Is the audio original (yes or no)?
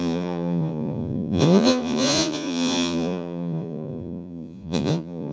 no